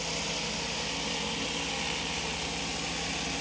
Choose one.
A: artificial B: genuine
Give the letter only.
B